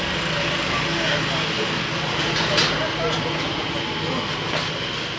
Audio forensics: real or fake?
real